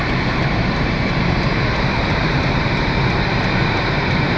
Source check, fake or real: fake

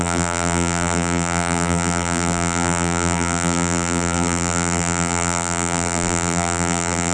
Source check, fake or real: fake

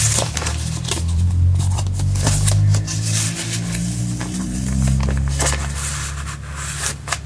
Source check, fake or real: fake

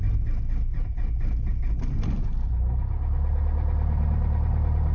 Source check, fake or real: real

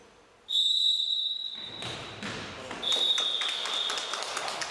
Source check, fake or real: real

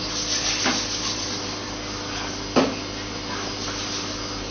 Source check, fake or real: real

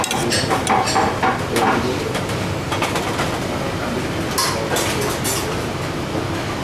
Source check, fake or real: real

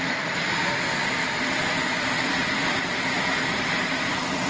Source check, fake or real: fake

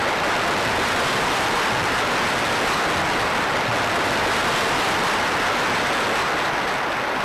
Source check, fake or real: real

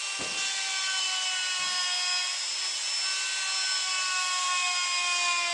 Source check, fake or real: real